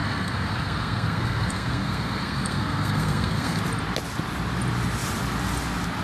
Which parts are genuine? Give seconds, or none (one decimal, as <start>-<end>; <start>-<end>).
3.6-6.0